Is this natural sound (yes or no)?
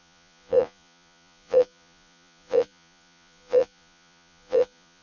no